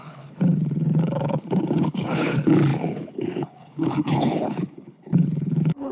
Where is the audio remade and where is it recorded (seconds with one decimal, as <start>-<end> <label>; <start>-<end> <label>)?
0.0-5.9 remade